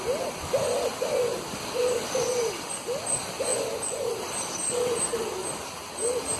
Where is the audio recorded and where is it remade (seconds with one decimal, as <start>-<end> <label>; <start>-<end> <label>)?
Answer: 0.0-3.5 recorded; 3.5-4.0 remade; 4.0-6.4 recorded